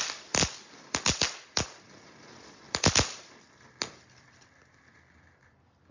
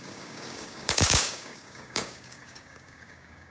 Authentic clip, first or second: first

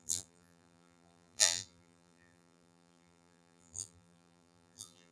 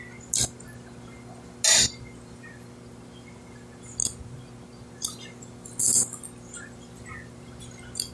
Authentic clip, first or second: second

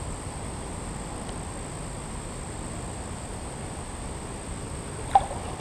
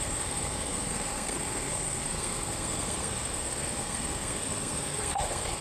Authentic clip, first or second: first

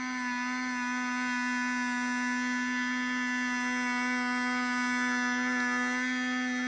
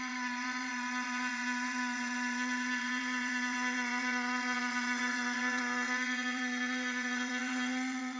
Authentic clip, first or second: first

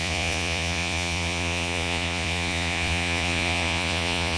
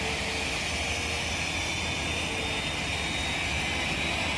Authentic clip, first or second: second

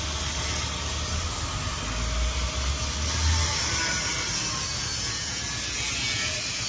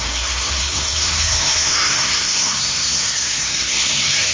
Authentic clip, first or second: first